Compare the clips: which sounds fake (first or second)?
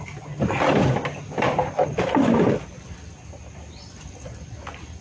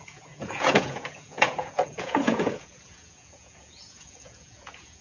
second